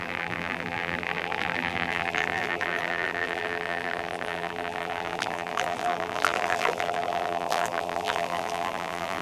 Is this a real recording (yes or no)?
no